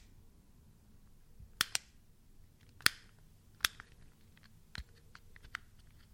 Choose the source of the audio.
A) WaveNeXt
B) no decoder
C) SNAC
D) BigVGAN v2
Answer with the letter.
B